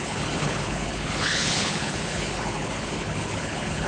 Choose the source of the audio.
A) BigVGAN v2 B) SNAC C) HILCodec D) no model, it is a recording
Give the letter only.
C